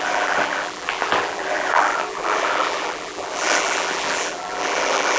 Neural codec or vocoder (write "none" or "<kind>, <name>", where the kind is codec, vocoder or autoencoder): vocoder, BigVGAN v2